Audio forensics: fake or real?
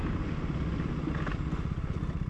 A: real